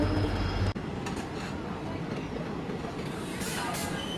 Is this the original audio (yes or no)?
yes